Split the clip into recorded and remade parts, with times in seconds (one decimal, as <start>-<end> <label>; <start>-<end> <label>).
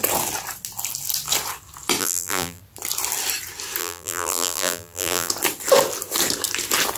0.0-2.0 recorded; 2.0-2.6 remade; 2.6-3.8 recorded; 3.8-5.3 remade; 5.3-7.0 recorded